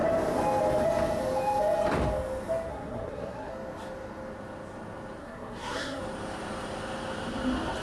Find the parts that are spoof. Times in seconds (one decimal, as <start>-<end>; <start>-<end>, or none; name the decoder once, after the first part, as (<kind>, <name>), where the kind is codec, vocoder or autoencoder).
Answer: 2.7-3.5 (codec, SNAC); 5.2-6.0